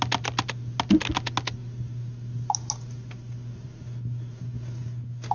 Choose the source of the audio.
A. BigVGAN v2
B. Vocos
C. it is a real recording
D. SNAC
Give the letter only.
C